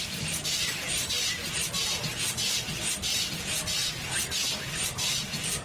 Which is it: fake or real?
real